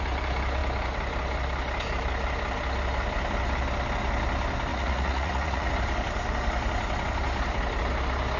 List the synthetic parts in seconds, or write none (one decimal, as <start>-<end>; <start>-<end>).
4.7-5.7